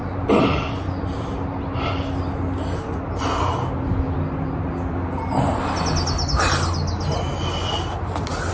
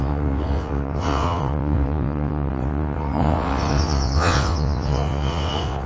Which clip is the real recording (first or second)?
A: first